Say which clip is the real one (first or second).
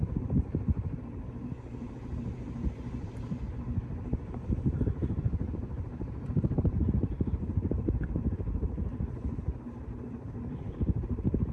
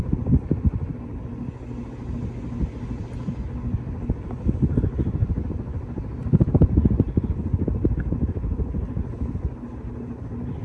second